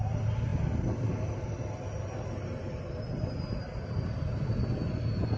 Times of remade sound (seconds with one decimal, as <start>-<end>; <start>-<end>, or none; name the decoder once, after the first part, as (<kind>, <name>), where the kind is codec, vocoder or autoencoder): none